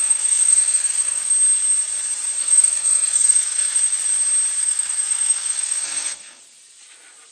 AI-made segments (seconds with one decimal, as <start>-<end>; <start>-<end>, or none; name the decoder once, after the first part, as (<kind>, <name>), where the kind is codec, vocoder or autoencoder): 0.0-1.3 (codec, SNAC); 2.4-3.8; 4.6-6.4